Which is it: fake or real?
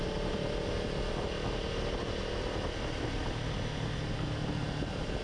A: real